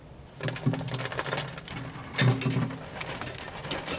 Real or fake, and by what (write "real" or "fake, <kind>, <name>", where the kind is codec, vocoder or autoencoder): real